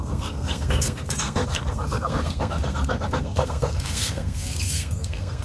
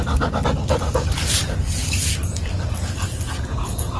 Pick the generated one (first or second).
first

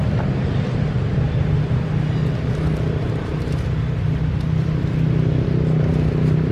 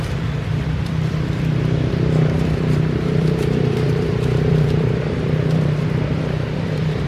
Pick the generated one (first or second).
second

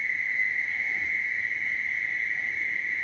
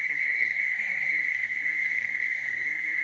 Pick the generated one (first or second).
second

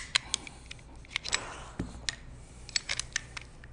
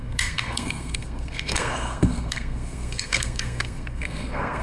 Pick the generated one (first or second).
second